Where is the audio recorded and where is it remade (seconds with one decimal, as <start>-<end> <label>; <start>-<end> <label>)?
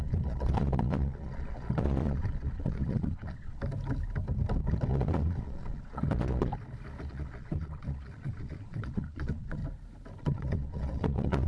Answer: 0.0-3.6 remade; 3.6-4.9 recorded; 4.9-6.5 remade; 6.5-7.1 recorded; 7.1-9.6 remade; 9.6-10.2 recorded; 10.2-11.5 remade